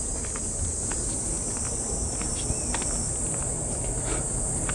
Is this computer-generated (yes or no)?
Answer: no